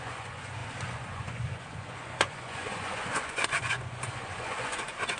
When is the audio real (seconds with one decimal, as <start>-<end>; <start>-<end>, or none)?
none